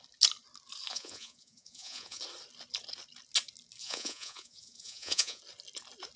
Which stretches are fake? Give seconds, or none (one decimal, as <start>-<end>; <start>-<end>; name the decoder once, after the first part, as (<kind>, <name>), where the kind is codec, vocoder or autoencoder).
0.9-2.2 (vocoder, Vocos); 3.8-5.4